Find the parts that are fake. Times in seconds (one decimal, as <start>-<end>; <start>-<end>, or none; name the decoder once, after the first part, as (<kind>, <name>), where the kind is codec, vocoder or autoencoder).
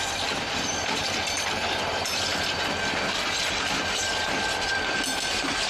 0.0-2.3 (vocoder, BigVGAN v2); 3.5-5.7